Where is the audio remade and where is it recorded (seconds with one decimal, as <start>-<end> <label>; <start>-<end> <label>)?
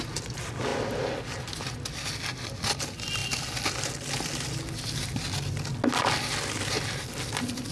0.0-7.7 recorded